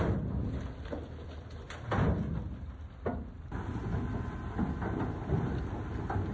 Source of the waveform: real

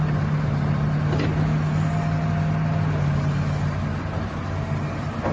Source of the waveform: real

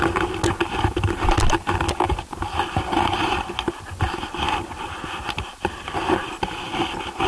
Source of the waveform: real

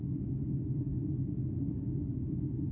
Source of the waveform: fake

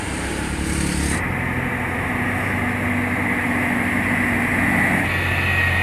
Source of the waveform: real